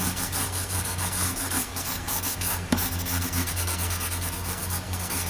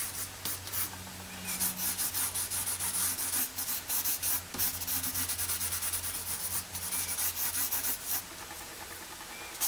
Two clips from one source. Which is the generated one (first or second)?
first